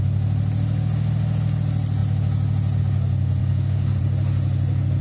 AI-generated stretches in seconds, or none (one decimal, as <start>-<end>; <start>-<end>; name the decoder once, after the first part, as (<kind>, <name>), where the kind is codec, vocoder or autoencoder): 3.4-4.0 (codec, DAC)